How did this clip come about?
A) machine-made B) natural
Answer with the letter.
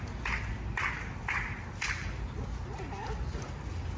B